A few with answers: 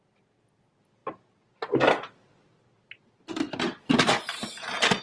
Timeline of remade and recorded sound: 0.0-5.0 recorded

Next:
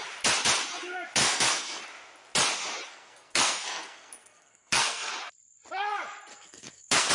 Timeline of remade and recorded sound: 0.0-1.2 recorded; 1.2-1.8 remade; 1.8-2.9 recorded; 2.9-5.1 remade; 5.1-6.3 recorded; 6.3-7.1 remade

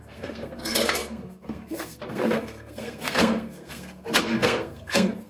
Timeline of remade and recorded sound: 0.0-5.3 remade